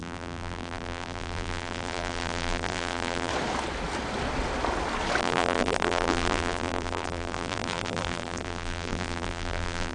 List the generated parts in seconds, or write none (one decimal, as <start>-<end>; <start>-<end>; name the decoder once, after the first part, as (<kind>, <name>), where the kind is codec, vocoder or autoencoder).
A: 0.0-3.3 (vocoder, BigVGAN v2); 5.2-9.9